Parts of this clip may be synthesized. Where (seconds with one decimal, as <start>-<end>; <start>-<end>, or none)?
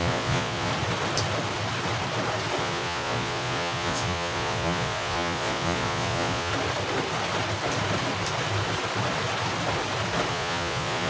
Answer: 0.0-0.7; 2.6-6.5; 10.3-11.1